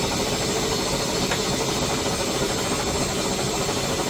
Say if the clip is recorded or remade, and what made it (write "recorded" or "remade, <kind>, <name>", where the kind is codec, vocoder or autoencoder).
recorded